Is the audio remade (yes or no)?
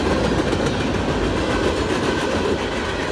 no